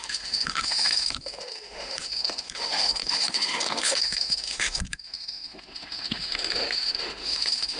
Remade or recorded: remade